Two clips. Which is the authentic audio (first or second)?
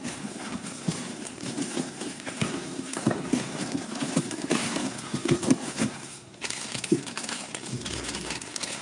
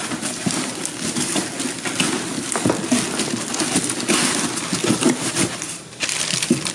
second